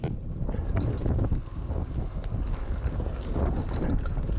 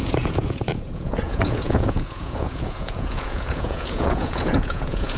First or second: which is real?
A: first